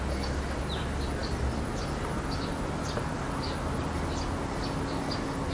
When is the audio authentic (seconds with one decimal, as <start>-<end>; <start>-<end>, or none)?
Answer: 0.0-5.5